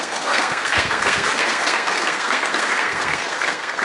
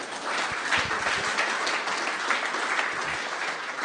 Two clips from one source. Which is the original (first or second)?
second